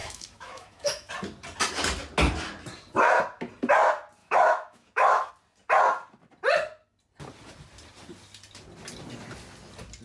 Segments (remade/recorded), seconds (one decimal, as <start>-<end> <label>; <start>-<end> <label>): 0.0-1.1 remade; 1.1-4.2 recorded; 4.2-5.3 remade; 5.3-10.0 recorded